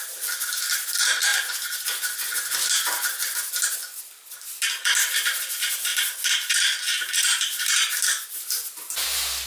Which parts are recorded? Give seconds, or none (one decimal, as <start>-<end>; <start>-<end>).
0.0-9.5